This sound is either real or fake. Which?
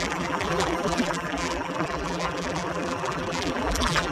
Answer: fake